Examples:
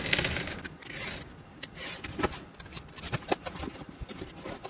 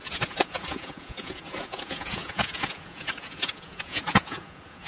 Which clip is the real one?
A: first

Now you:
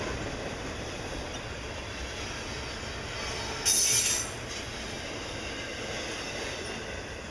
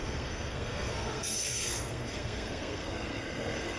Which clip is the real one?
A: first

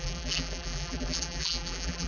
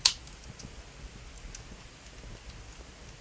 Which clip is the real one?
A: second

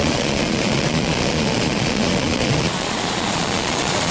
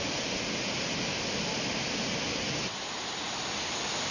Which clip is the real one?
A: second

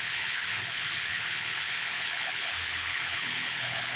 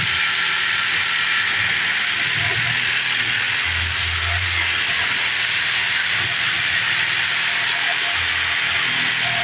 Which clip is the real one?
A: second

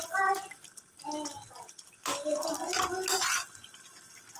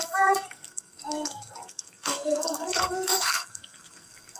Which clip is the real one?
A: first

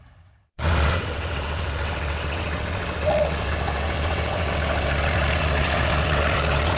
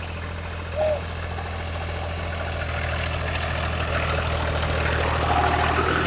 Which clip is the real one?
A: second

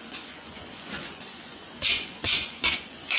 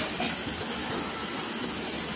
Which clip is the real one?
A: second